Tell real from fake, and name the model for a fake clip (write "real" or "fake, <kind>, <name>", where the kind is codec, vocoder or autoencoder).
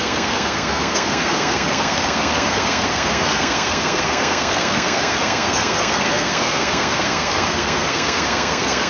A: fake, codec, SNAC